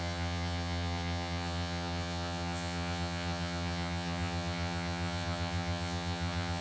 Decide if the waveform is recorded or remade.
remade